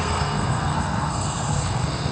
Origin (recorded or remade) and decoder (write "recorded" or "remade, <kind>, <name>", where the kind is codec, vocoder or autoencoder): remade, codec, SNAC